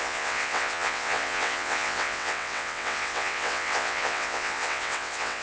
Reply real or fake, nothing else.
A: fake